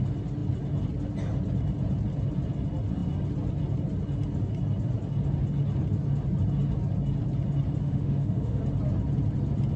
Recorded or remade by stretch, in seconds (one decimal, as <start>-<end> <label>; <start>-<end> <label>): 0.0-7.8 recorded; 7.8-8.6 remade; 8.6-9.8 recorded